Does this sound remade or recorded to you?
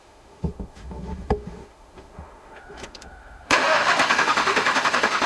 remade